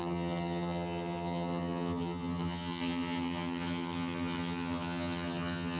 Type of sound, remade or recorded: remade